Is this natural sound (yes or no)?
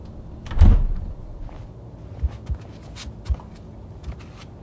yes